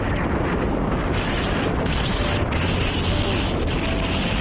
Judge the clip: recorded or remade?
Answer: recorded